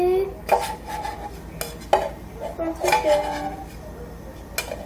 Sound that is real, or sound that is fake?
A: real